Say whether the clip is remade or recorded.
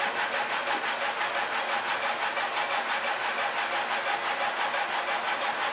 recorded